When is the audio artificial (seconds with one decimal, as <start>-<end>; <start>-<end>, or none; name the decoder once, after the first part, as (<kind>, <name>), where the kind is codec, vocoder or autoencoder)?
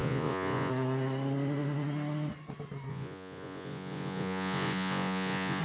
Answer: 0.0-0.7 (vocoder, Vocos); 2.9-5.6